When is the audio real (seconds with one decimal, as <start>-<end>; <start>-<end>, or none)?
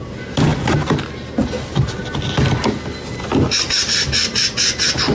0.0-5.1